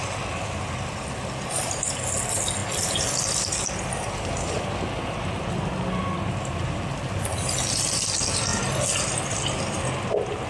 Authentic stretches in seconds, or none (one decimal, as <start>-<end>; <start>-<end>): 0.0-10.5